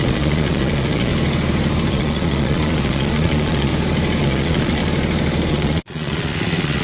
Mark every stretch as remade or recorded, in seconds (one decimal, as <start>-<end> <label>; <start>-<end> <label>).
0.0-1.1 remade; 1.1-1.9 recorded; 1.9-3.7 remade; 3.7-4.2 recorded; 4.2-4.8 remade; 4.8-5.5 recorded; 5.5-6.8 remade